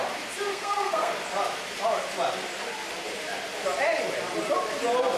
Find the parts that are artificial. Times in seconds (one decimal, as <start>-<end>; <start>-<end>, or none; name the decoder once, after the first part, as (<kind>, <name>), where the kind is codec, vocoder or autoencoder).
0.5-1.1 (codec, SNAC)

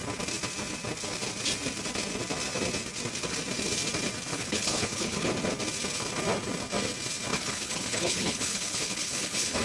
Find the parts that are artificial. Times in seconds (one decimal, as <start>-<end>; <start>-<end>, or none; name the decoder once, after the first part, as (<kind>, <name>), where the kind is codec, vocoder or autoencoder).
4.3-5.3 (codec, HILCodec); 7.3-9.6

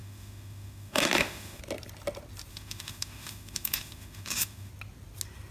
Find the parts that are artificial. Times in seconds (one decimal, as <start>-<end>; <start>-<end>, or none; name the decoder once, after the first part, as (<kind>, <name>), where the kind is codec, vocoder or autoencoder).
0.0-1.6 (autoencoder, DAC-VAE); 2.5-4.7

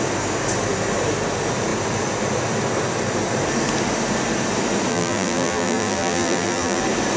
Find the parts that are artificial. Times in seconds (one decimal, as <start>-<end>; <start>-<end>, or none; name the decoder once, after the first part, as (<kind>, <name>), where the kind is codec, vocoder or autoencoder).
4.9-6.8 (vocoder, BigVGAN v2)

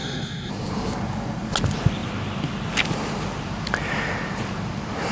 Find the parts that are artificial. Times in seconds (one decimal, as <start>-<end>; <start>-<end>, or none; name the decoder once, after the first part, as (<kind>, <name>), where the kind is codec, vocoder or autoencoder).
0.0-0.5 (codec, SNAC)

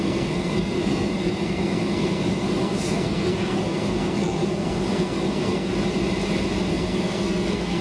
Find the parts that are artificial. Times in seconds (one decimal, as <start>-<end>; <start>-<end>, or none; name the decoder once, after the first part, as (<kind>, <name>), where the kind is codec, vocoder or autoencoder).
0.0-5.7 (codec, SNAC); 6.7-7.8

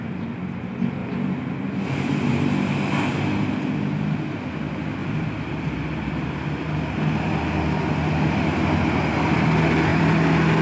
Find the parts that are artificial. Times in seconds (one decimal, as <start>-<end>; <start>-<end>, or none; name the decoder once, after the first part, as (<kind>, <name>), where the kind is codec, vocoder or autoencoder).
1.0-2.4 (vocoder, BigVGAN v2); 5.0-6.5; 9.9-10.6

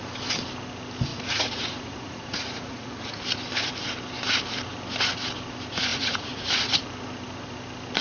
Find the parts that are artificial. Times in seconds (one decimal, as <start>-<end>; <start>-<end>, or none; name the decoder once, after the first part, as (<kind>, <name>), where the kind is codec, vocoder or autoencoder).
1.1-3.2 (vocoder, Vocos); 5.9-6.8